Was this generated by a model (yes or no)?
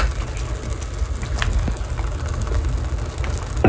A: no